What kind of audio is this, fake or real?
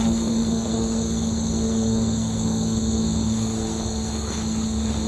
fake